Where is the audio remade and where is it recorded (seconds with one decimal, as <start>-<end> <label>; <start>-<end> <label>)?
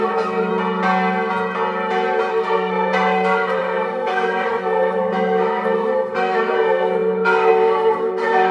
0.0-0.5 remade; 0.5-2.3 recorded; 2.3-8.5 remade